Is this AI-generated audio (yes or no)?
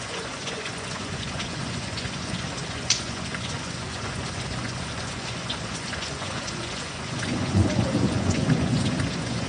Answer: yes